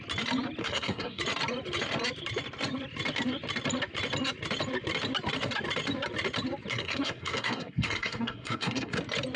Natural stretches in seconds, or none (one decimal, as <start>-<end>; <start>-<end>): 0.0-0.6; 1.2-6.7; 9.0-9.4